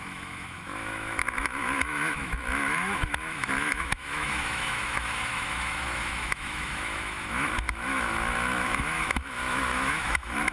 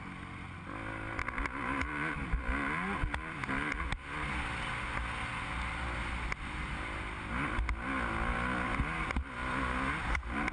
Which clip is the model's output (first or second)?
first